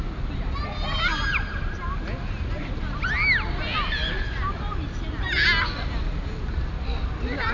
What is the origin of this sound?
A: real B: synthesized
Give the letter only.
A